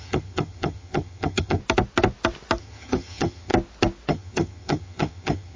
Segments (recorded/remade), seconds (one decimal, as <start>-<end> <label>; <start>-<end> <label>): 0.0-1.6 remade; 1.6-2.6 recorded; 2.6-3.5 remade; 3.5-4.1 recorded; 4.1-5.6 remade